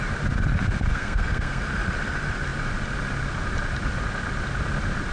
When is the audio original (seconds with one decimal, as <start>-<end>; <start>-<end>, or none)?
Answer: 0.0-0.9; 1.6-5.1